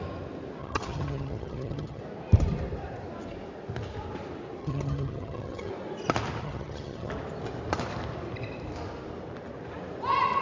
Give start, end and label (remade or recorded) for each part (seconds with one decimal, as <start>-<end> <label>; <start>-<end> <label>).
0.0-0.6 recorded; 0.6-2.0 remade; 2.0-4.6 recorded; 4.6-5.7 remade; 5.7-6.4 recorded; 6.4-7.1 remade; 7.1-10.4 recorded